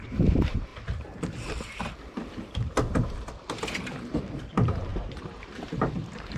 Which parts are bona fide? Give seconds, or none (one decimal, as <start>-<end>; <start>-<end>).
0.7-4.2